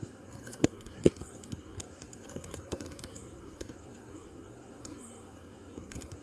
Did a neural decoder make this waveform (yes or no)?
yes